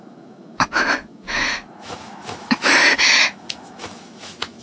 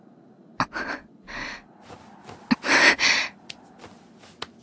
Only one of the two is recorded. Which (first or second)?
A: second